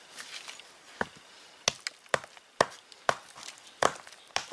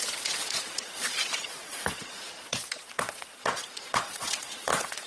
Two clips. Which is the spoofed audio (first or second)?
second